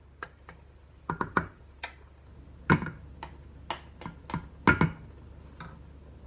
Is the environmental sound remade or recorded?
recorded